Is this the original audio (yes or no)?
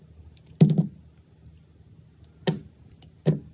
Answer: yes